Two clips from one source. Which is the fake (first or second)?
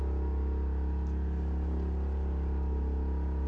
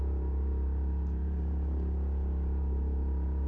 second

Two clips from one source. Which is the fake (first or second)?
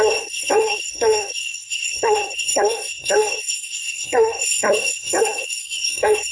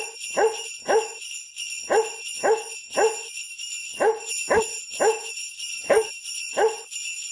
first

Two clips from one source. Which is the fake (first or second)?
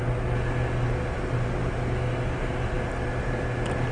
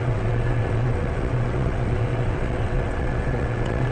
second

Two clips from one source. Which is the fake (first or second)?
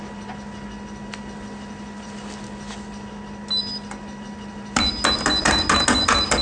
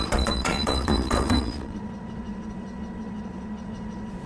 second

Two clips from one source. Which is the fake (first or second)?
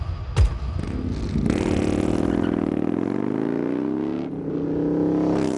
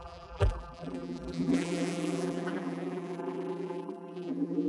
second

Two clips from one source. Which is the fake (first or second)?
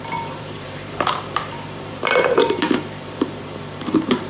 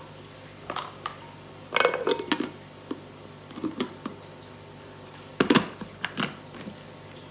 first